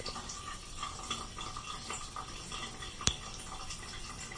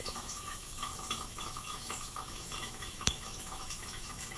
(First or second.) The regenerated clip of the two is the second